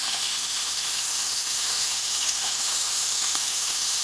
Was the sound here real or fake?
fake